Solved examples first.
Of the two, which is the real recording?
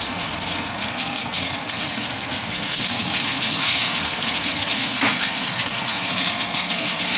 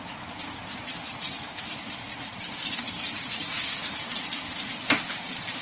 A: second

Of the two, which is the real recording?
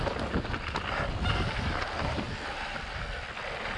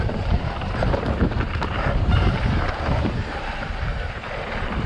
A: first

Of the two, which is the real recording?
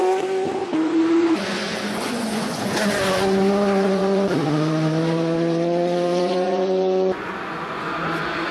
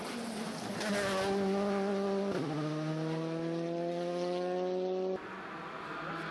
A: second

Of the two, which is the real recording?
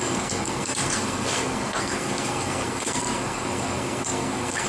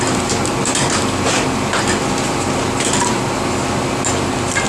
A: second